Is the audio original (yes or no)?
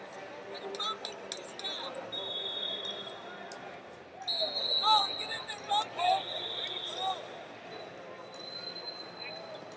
yes